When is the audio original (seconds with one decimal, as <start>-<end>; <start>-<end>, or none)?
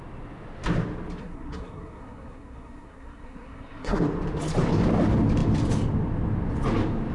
0.0-1.2; 4.0-7.1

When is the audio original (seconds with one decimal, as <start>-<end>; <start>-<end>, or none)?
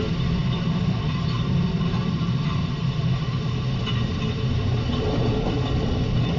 none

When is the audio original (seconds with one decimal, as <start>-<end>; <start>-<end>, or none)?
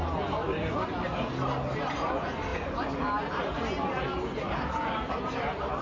0.0-5.8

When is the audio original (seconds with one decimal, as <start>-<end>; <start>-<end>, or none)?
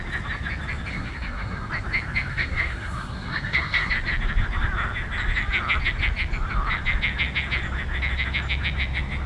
0.0-0.9; 1.7-2.3; 3.9-9.3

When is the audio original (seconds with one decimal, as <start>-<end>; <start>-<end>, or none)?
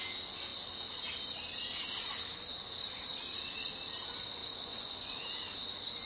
0.0-4.4; 5.1-6.1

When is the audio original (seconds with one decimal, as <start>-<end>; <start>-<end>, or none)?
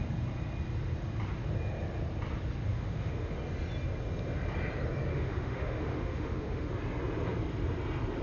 0.0-2.7; 3.3-5.1; 6.7-8.2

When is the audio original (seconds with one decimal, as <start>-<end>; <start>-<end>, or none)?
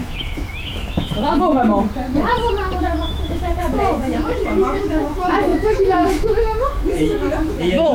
1.7-2.8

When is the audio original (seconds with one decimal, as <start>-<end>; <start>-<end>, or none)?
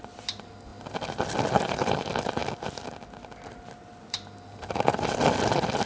0.0-5.9